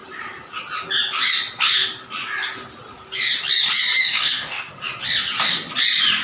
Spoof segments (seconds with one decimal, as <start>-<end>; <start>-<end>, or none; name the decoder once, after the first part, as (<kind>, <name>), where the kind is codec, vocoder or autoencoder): 4.0-4.7 (codec, DAC)